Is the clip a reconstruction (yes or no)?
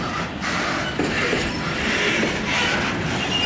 no